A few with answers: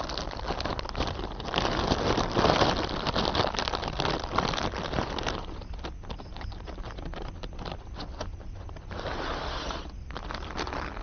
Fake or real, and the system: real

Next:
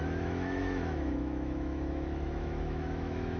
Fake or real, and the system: fake, autoencoder, DAC-VAE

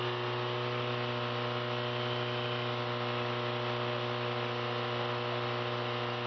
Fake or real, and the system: real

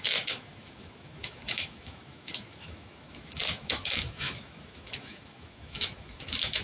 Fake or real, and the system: fake, autoencoder, DAC-VAE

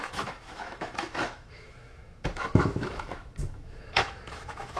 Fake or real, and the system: fake, autoencoder, DAC-VAE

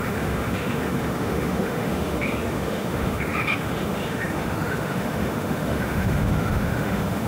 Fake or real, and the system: fake, autoencoder, DAC-VAE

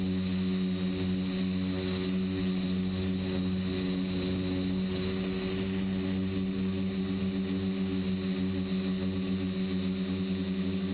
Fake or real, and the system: real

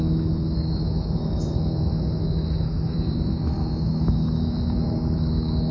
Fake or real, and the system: fake, autoencoder, DAC-VAE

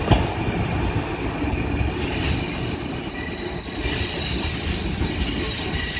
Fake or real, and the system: real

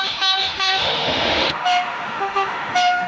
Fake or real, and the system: fake, autoencoder, DAC-VAE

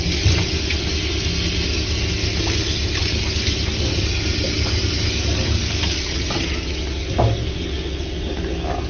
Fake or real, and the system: real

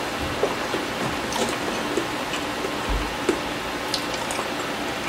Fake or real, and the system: real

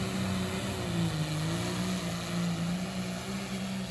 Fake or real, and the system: real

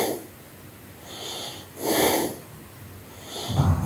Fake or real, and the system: real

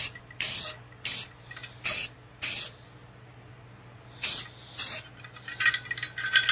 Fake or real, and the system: real